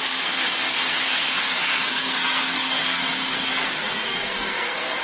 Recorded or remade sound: remade